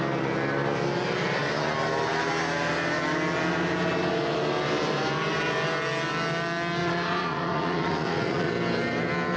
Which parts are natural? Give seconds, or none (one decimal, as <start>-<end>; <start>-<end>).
0.0-6.8; 8.5-9.4